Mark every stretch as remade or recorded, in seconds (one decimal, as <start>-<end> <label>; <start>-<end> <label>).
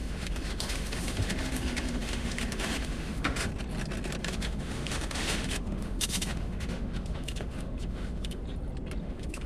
0.0-3.5 remade; 3.5-4.2 recorded; 4.2-8.4 remade; 8.4-9.0 recorded; 9.0-9.5 remade